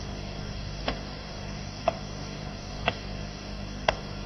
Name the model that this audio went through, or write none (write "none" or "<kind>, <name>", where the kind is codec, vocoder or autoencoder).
codec, DAC